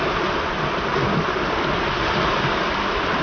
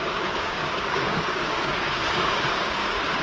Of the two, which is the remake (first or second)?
second